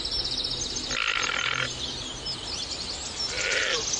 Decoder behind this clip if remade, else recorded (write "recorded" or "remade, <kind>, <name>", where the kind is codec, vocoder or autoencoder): recorded